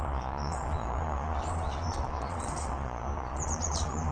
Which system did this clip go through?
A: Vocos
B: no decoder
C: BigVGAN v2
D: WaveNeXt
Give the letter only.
A